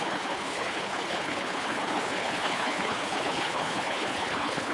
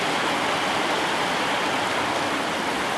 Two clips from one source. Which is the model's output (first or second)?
first